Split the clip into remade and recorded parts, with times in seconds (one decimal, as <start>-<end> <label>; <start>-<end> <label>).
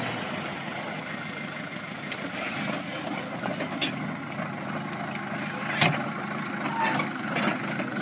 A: 0.0-8.0 recorded